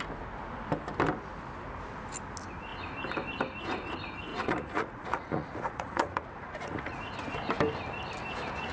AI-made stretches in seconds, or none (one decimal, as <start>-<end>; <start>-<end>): 4.3-7.0